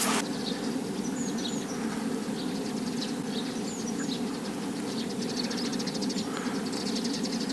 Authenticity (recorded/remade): recorded